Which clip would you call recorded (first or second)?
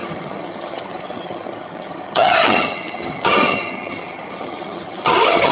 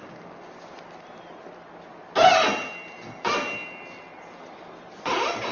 second